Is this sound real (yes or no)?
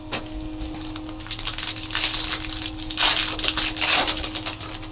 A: yes